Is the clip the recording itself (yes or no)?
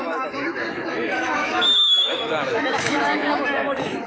no